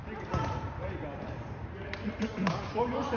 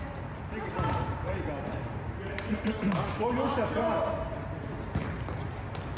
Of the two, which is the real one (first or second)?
second